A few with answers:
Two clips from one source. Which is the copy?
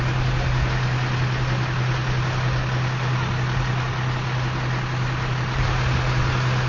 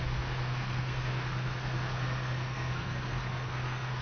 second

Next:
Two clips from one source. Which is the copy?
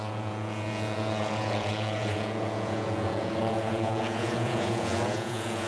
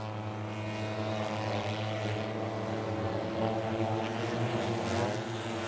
first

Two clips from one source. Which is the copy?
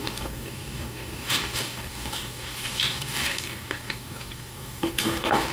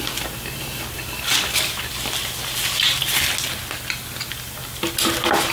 first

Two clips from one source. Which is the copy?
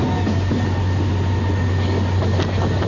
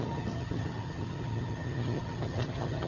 second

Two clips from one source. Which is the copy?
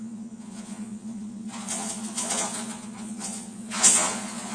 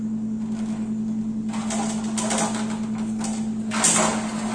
first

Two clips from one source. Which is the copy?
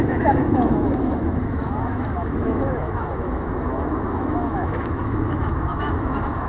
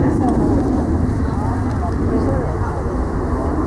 first